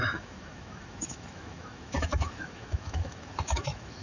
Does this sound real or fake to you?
fake